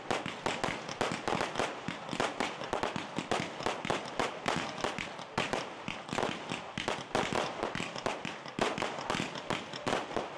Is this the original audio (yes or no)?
yes